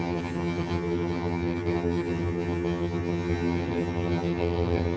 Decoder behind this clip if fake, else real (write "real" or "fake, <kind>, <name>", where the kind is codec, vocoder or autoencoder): fake, vocoder, HiFi-GAN